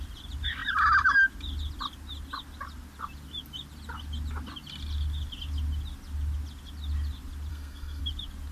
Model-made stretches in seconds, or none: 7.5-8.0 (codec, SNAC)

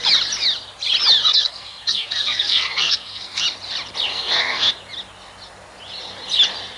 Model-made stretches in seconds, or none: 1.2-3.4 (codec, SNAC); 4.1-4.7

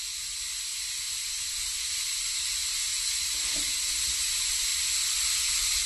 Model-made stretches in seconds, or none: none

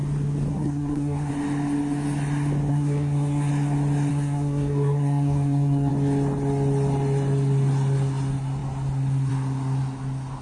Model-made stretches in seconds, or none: 0.5-1.3 (codec, SNAC); 2.7-3.5; 4.1-5.9